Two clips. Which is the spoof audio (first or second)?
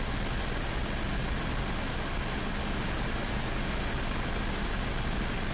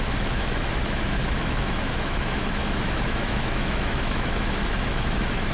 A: second